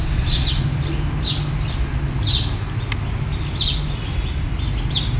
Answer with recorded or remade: recorded